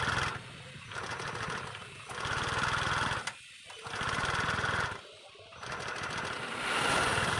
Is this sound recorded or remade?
recorded